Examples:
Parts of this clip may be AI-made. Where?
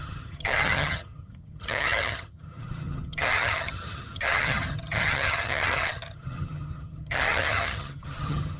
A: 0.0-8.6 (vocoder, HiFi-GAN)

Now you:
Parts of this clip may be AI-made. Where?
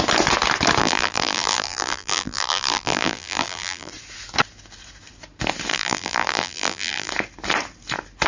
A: 0.8-3.9 (vocoder, BigVGAN v2); 5.7-7.1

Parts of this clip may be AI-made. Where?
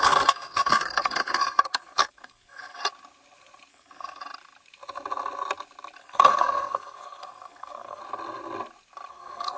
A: 0.0-2.8 (codec, SNAC); 3.7-4.2; 6.0-8.0; 9.1-9.6